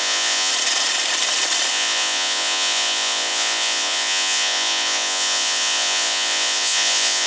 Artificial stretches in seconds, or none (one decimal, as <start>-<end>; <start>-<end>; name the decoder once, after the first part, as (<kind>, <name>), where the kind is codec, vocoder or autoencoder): 0.0-0.5 (vocoder, Vocos); 1.7-7.3